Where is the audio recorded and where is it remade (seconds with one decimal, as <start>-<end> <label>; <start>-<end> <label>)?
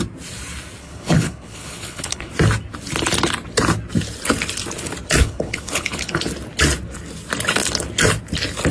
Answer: 0.0-0.8 recorded; 0.8-2.3 remade; 2.3-5.2 recorded; 5.2-6.2 remade; 6.2-8.7 recorded